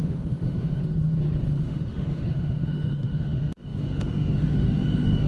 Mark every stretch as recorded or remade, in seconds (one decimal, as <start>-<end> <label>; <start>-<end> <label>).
0.0-0.8 remade; 0.8-1.6 recorded; 1.6-5.3 remade